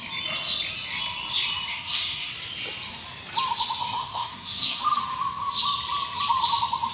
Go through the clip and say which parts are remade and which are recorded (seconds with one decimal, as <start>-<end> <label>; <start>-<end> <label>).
0.0-1.7 recorded; 1.7-2.3 remade; 2.3-3.8 recorded; 3.8-4.8 remade; 4.8-6.9 recorded